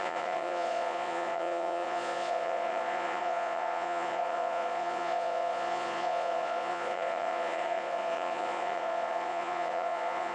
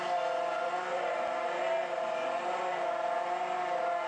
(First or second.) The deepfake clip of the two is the first